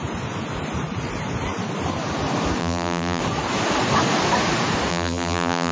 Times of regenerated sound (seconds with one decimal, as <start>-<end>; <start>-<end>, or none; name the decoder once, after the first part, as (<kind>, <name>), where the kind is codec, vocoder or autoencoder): 2.6-3.2 (vocoder, BigVGAN v2); 4.9-5.7